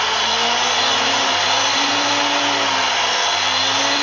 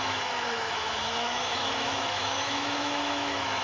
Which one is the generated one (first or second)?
second